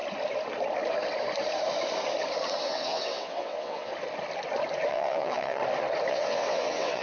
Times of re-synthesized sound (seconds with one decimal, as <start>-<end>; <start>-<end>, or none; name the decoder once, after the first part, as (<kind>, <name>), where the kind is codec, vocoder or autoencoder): 2.6-3.9 (vocoder, WaveNeXt); 4.9-5.6; 6.1-7.0